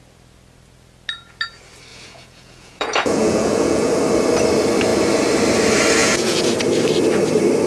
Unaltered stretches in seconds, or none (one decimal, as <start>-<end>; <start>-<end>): 0.0-1.9; 3.9-6.0; 6.5-7.7